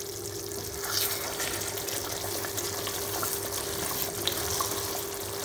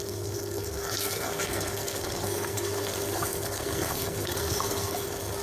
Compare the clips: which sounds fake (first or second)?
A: second